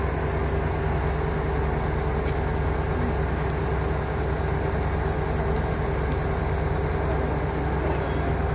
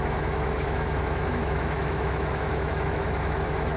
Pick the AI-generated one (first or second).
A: second